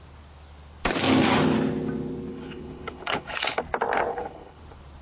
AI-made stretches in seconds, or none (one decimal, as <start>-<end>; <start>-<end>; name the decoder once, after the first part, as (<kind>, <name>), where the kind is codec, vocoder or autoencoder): 2.3-3.6 (codec, HILCodec); 4.1-4.6